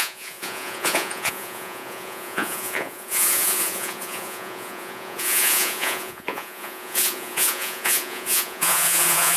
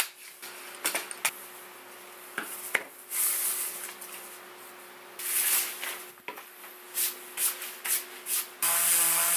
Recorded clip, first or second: second